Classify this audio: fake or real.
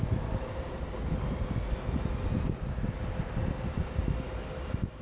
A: real